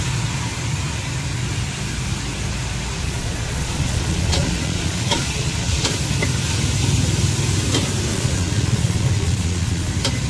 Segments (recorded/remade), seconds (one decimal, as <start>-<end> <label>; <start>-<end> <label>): 0.0-3.0 recorded; 3.0-5.9 remade; 5.9-8.1 recorded; 8.1-9.9 remade; 9.9-10.3 recorded